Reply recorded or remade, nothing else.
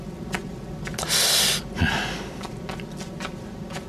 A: recorded